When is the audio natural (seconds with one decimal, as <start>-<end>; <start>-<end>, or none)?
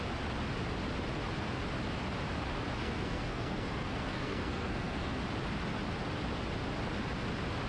0.0-2.8; 5.2-7.7